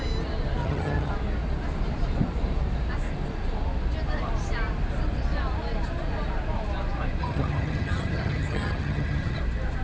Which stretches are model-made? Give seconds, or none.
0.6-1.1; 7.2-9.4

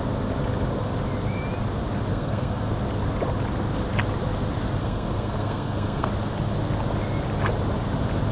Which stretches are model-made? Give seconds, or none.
2.1-2.7; 4.8-6.1

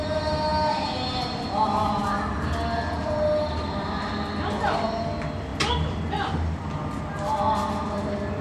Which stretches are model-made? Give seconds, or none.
none